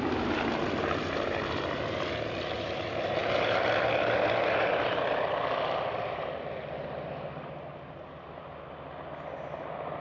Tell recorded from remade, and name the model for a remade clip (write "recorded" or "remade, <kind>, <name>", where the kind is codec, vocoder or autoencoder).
recorded